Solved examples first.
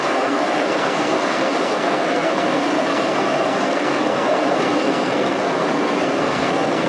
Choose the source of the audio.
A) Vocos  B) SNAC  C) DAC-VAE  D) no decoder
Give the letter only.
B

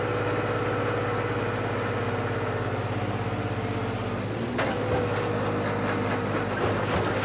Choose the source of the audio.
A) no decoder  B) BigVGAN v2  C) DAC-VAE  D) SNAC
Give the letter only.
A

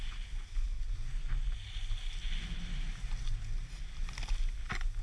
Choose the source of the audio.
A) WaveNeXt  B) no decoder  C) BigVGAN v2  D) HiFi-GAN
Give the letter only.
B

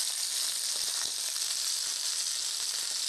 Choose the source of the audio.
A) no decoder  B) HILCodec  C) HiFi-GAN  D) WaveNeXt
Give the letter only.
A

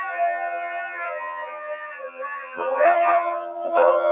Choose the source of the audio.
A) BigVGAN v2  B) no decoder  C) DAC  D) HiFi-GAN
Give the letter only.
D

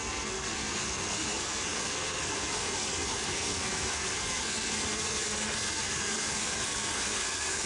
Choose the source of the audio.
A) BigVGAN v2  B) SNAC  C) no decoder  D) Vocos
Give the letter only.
B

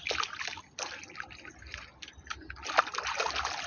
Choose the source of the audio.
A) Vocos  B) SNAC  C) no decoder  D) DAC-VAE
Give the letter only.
C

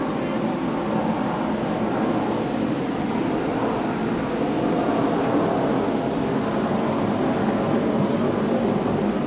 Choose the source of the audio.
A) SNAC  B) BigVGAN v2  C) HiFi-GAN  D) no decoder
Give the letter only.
D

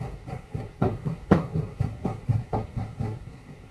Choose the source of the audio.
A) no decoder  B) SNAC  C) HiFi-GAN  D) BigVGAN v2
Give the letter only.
B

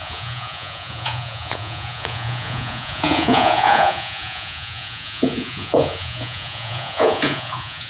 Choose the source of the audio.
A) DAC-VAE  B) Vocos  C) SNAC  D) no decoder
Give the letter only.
B